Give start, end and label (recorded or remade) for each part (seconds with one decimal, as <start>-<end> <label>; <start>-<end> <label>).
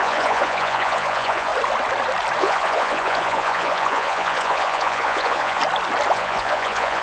0.0-1.5 remade; 1.5-2.4 recorded; 2.4-5.6 remade; 5.6-6.1 recorded; 6.1-7.0 remade